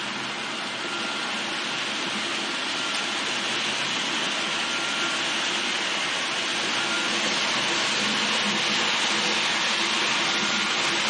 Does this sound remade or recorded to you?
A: recorded